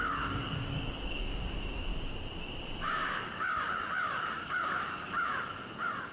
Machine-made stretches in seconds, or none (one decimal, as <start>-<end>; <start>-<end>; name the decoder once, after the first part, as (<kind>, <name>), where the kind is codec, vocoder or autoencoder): 0.0-1.9 (codec, DAC); 2.6-3.3; 4.2-5.3